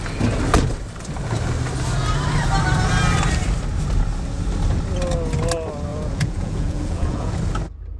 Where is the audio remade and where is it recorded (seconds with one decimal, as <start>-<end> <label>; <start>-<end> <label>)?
0.0-5.9 recorded; 5.9-7.3 remade; 7.3-8.0 recorded